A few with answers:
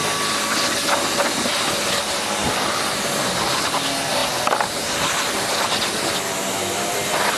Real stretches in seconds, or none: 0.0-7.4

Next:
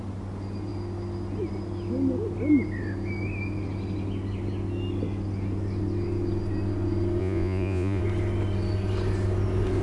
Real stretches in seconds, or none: 0.0-7.2; 8.0-9.8

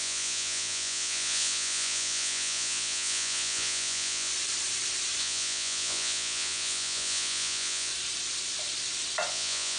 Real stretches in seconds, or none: 4.3-5.2; 7.9-9.3

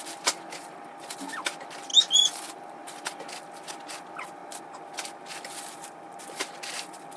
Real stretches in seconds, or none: 0.0-7.2

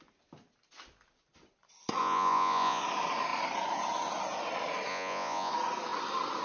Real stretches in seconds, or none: 0.0-2.0; 2.8-4.9; 5.5-6.4